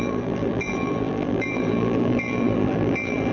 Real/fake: fake